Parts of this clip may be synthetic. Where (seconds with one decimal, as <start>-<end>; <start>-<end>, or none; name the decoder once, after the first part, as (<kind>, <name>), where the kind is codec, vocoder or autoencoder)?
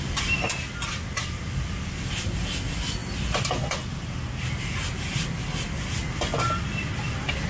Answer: none